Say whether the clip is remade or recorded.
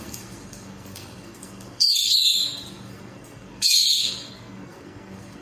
remade